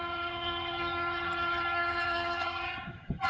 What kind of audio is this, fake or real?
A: fake